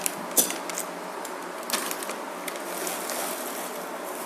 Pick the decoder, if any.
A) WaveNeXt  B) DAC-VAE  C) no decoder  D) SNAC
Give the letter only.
C